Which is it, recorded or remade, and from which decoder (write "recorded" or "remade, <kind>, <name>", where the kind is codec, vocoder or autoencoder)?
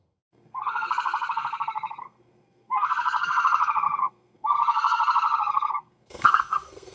remade, codec, SNAC